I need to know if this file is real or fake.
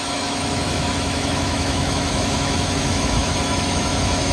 fake